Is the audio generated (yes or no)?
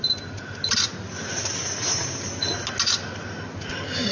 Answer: no